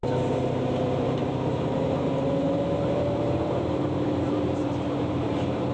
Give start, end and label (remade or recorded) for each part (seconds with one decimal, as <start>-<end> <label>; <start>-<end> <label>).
0.0-5.7 remade